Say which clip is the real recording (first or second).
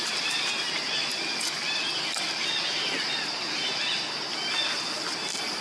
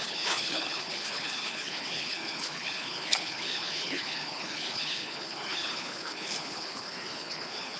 first